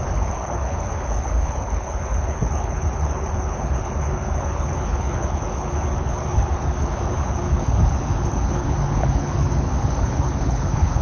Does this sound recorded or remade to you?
remade